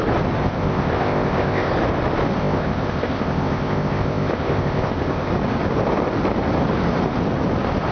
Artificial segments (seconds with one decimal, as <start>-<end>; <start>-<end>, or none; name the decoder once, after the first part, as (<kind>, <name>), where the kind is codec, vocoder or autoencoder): 0.4-1.7 (codec, ZipCodec); 2.4-5.3